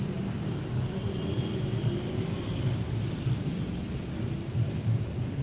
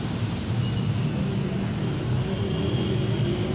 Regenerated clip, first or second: first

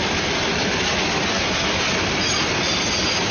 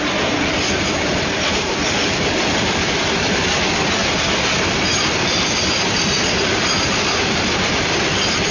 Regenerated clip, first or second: second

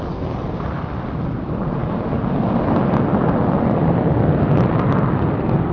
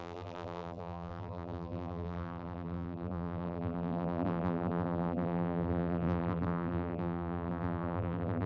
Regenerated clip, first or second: second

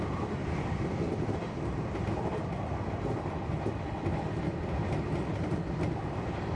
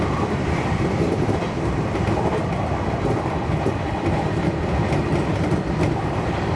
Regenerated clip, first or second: second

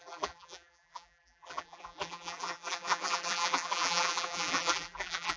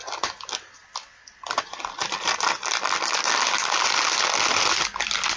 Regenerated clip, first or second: first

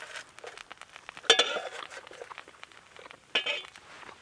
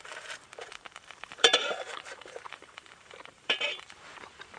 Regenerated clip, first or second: second